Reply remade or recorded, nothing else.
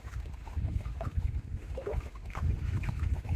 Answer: remade